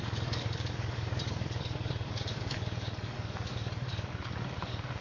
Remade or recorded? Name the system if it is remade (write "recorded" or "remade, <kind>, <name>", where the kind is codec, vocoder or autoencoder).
remade, codec, DAC